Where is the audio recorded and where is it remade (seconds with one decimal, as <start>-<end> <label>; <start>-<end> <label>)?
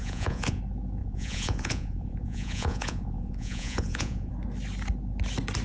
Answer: 0.0-0.6 remade; 0.6-1.0 recorded; 1.0-4.3 remade; 4.3-5.6 recorded